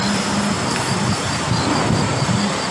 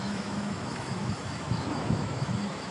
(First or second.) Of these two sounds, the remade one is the second